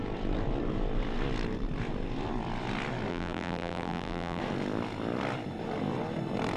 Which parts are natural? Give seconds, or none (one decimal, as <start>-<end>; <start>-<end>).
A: 0.0-3.1; 4.4-6.6